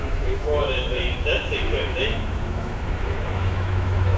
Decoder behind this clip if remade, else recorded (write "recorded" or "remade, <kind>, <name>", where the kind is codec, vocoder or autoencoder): remade, autoencoder, DAC-VAE